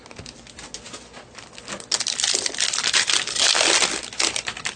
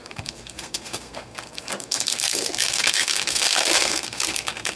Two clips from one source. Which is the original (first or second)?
first